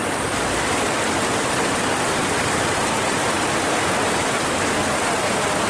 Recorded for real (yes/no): no